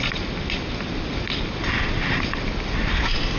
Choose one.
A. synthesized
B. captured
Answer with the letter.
B